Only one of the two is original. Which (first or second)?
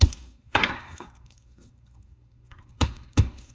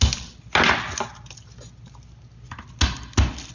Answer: second